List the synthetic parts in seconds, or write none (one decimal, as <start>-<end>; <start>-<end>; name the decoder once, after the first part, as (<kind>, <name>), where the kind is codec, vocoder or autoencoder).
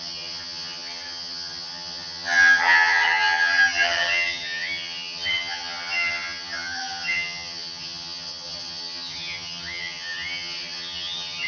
0.0-11.5 (vocoder, HiFi-GAN)